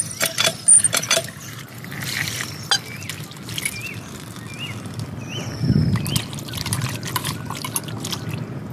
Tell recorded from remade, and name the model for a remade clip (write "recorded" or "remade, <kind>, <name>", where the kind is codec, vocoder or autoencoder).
recorded